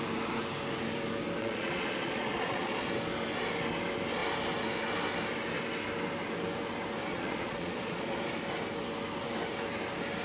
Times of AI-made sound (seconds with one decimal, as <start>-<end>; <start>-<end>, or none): 1.4-2.9; 7.1-8.2